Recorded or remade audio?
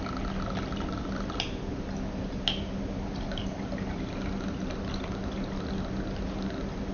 recorded